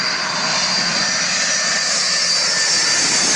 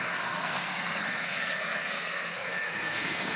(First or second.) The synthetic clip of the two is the second